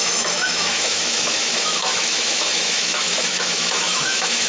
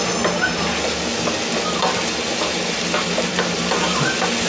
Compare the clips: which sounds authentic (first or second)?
second